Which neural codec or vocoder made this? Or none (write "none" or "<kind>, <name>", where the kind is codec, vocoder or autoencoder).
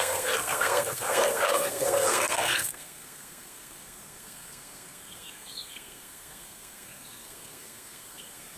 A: codec, SNAC